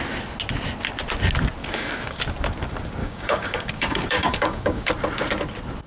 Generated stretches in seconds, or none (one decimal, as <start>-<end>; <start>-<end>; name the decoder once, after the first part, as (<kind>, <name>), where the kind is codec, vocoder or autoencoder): 1.6-2.2 (codec, DAC); 3.0-4.9